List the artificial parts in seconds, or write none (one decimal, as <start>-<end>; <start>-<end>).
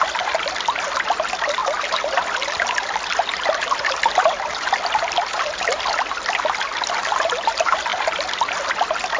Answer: 1.6-6.7; 7.9-8.7